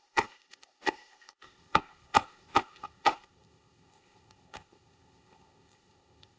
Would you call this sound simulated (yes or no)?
yes